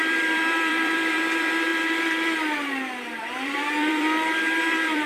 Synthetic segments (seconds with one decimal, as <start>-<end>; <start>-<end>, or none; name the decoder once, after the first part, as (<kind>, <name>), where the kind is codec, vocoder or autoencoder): 0.0-5.1 (vocoder, BigVGAN v2)